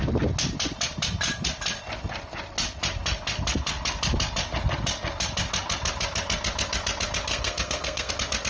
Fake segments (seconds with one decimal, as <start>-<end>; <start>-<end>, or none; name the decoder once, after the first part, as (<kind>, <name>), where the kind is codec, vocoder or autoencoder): 7.3-8.1 (codec, SNAC)